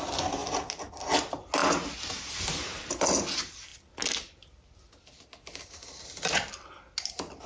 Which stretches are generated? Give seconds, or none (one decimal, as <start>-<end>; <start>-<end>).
none